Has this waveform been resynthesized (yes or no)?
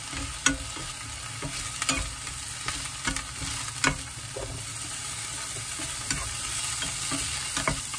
no